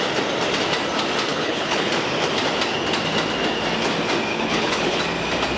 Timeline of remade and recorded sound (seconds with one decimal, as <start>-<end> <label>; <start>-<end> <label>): 0.0-1.3 recorded; 1.3-1.9 remade; 1.9-4.3 recorded; 4.3-5.0 remade; 5.0-5.6 recorded